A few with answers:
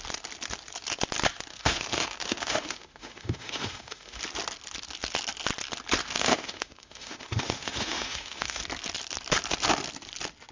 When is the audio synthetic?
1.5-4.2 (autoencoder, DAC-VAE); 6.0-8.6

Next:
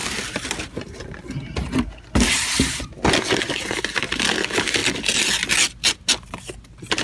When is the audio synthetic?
none